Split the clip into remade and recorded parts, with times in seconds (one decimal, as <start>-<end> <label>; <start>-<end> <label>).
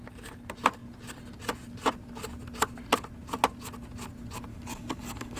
0.0-4.5 recorded; 4.5-5.4 remade